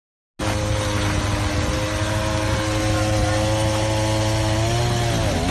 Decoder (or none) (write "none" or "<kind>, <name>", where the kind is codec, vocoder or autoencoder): none